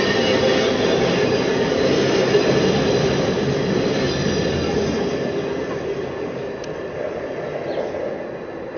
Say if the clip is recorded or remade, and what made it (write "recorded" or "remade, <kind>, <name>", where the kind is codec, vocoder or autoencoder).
recorded